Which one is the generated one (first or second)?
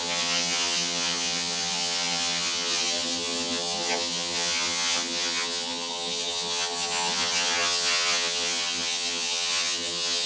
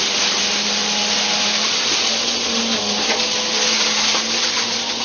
first